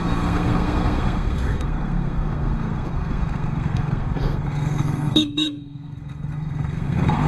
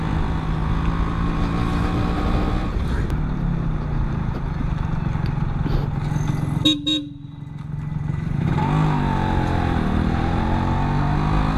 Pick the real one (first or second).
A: second